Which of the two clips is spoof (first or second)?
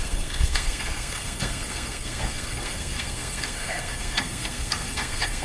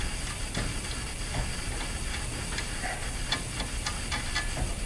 first